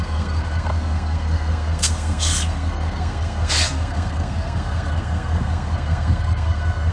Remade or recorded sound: remade